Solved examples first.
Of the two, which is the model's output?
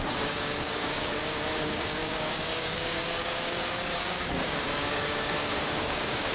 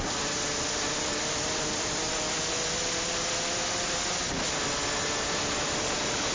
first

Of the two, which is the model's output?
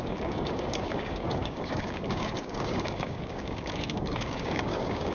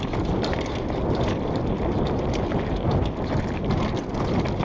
first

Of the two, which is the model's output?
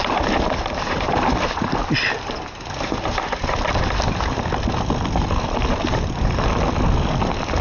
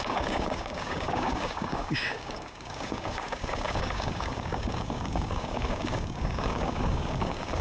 second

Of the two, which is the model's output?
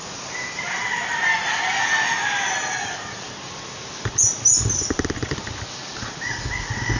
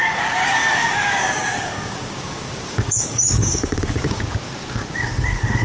second